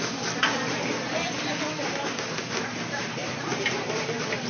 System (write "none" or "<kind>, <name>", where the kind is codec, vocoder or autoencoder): none